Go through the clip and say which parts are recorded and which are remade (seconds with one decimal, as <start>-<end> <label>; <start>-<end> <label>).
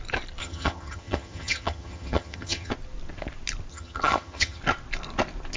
0.0-0.4 recorded; 0.4-2.7 remade; 2.7-3.7 recorded; 3.7-4.6 remade; 4.6-5.6 recorded